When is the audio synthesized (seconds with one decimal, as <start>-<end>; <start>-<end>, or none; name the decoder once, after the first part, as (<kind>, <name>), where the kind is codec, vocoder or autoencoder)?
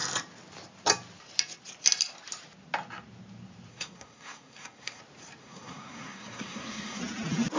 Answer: 3.7-5.0 (codec, SNAC); 5.4-7.0